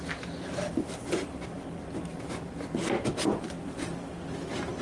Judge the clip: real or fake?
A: real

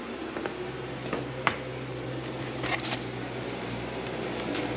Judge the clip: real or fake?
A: real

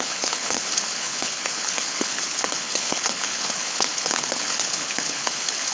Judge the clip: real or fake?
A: fake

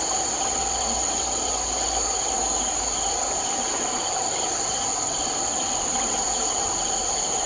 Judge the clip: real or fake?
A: real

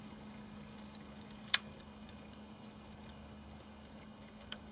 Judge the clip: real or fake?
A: fake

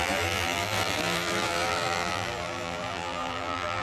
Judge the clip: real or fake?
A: fake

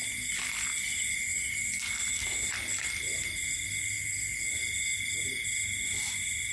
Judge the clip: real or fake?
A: real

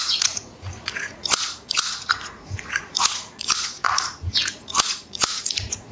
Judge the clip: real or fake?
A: fake